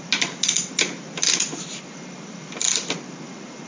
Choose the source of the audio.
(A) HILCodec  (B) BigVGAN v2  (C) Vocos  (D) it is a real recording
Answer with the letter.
D